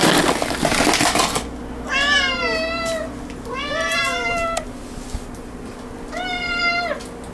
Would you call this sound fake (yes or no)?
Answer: no